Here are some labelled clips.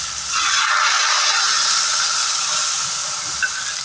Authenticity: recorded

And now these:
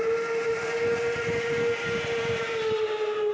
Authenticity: recorded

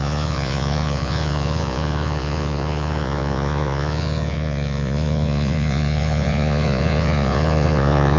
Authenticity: remade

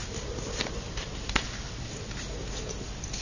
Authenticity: recorded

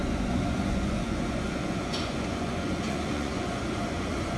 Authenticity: remade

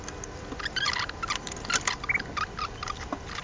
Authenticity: recorded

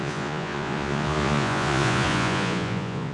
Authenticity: remade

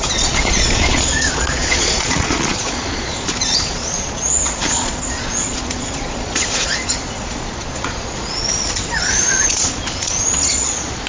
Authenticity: remade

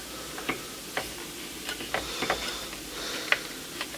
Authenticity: recorded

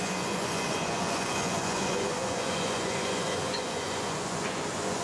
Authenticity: remade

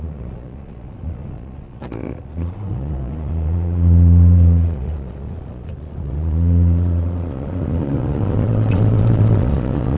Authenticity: remade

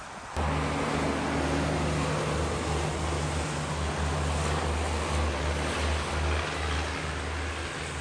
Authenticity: recorded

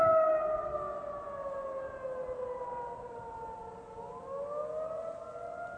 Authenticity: recorded